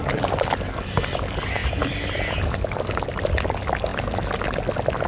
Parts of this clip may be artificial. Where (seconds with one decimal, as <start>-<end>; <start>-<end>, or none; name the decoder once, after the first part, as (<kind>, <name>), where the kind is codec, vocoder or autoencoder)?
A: none